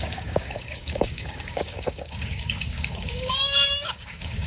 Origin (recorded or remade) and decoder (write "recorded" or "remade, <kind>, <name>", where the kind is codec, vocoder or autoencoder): remade, codec, DAC